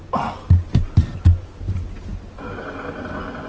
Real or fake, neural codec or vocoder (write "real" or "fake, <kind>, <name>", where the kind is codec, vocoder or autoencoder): real